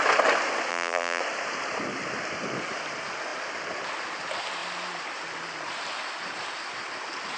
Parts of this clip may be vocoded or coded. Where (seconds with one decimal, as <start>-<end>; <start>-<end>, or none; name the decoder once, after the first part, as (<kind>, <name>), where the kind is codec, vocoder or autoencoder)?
0.7-1.2 (vocoder, BigVGAN v2)